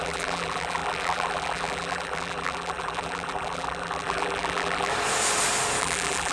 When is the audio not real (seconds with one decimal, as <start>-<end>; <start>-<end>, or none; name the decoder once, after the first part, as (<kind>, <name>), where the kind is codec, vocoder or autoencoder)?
0.0-4.9 (vocoder, BigVGAN v2); 5.8-6.3